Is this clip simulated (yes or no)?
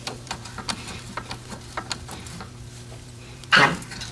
no